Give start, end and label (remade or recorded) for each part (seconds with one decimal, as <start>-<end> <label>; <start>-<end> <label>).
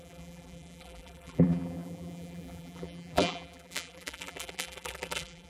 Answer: 0.0-5.5 remade